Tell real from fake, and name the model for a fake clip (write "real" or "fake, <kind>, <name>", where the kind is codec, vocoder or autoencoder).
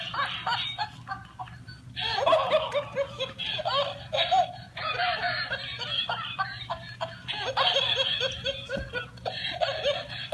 real